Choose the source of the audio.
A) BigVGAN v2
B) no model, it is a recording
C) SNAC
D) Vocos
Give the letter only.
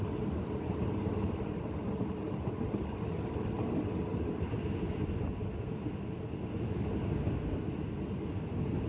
B